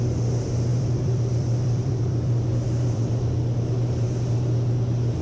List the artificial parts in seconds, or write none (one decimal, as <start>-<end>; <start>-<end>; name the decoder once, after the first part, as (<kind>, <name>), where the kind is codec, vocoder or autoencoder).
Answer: 0.7-2.4 (vocoder, BigVGAN v2)